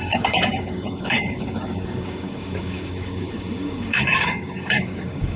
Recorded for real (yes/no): no